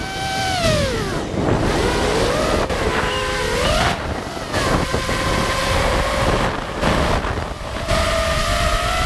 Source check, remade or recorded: recorded